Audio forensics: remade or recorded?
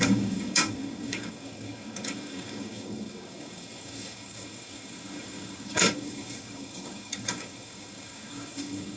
remade